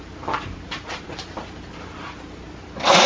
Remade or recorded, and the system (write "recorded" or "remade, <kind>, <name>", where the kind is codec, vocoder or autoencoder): recorded